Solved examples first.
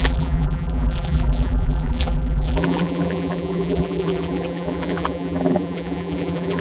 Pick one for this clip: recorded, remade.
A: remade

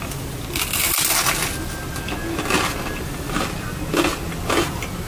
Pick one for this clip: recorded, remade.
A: recorded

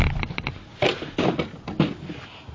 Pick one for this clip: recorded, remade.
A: recorded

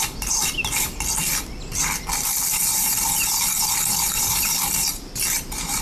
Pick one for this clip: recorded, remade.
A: remade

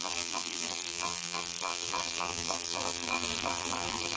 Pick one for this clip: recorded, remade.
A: remade